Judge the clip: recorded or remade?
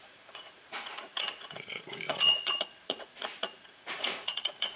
remade